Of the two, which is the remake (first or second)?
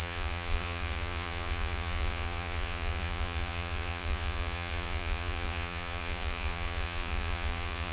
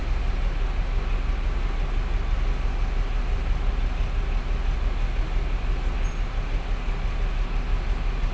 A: first